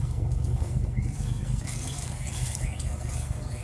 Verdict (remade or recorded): remade